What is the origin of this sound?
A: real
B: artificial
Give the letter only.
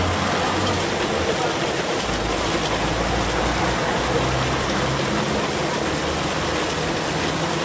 A